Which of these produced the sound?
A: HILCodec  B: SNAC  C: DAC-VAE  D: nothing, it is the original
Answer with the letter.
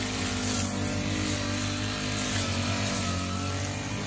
D